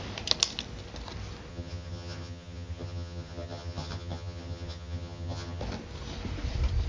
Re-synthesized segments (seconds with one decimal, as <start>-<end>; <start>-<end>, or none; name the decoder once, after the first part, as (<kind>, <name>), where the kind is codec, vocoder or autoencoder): 1.5-5.6 (vocoder, HiFi-GAN)